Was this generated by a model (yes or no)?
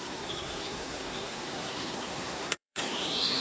yes